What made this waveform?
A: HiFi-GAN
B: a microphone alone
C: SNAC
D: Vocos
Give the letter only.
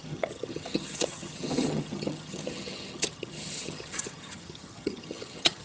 A